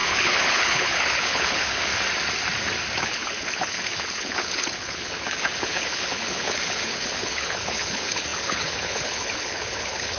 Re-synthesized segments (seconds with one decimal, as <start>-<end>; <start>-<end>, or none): 0.0-1.9; 3.0-10.2